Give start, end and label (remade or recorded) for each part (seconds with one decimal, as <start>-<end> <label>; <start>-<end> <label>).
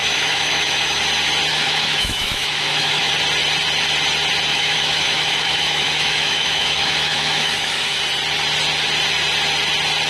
0.0-1.0 remade; 1.0-1.5 recorded; 1.5-3.1 remade; 3.1-4.5 recorded; 4.5-8.0 remade; 8.0-10.1 recorded